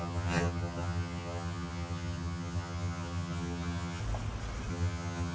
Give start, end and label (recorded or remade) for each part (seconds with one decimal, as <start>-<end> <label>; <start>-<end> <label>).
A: 0.0-4.0 remade; 4.0-4.7 recorded; 4.7-5.3 remade